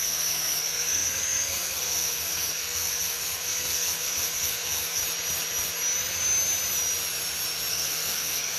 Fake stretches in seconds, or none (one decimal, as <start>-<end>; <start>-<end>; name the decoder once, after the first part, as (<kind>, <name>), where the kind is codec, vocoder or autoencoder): 0.0-5.0 (codec, SNAC); 7.7-8.6